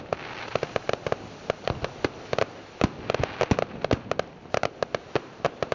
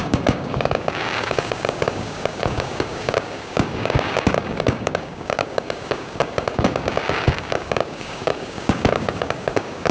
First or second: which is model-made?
second